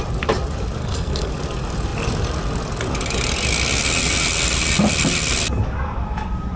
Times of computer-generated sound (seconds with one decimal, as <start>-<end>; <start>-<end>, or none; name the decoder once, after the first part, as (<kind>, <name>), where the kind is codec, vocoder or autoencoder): 0.8-1.3 (codec, SNAC)

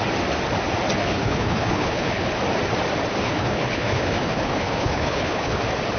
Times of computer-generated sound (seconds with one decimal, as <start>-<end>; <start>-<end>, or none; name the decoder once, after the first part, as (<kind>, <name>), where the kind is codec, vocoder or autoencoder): 1.0-2.3 (codec, HILCodec); 3.2-5.6

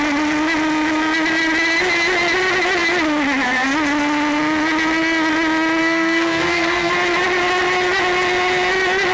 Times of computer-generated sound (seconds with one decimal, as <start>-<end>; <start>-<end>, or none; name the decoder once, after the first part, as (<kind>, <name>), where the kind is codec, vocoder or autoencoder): 5.8-6.9 (codec, SNAC)

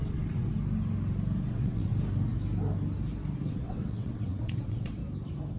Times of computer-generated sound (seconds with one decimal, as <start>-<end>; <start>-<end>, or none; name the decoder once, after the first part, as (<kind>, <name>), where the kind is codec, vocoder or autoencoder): 0.0-0.5 (vocoder, WaveNeXt); 1.5-1.9; 3.5-5.0

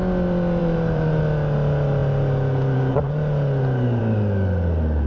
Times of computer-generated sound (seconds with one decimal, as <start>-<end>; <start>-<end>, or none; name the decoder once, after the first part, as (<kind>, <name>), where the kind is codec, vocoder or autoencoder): 0.6-1.2 (vocoder, BigVGAN v2)

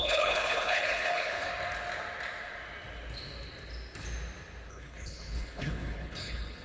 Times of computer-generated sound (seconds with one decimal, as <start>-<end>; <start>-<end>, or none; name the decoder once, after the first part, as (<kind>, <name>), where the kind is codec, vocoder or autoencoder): 0.0-1.5 (codec, HILCodec); 4.7-6.6

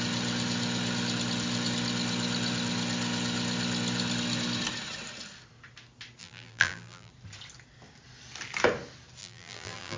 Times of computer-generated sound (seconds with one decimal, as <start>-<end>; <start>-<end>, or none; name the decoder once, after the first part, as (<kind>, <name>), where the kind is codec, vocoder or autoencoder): 6.2-7.1 (vocoder, BigVGAN v2); 9.2-10.0

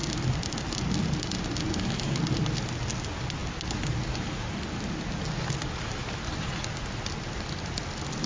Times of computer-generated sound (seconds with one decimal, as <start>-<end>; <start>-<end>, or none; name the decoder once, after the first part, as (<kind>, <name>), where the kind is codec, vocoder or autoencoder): none